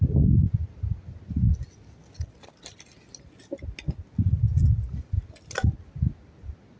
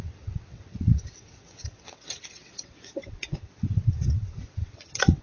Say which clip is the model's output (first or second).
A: second